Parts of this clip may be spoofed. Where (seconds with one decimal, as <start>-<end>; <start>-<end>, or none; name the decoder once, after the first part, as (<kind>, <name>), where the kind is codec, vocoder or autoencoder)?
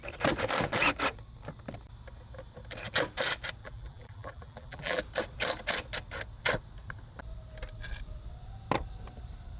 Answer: 3.6-5.0 (vocoder, BigVGAN v2)